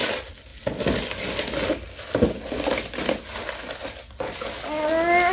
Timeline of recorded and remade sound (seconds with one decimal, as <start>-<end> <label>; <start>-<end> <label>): 0.0-5.3 recorded